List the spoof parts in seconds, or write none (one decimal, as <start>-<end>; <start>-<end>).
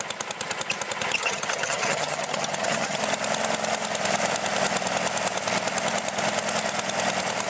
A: 1.2-3.0